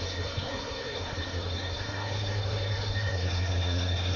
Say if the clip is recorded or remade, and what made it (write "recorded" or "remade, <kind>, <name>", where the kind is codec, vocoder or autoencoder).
remade, codec, SNAC